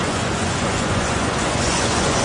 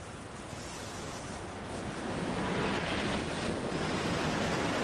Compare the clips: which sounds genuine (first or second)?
second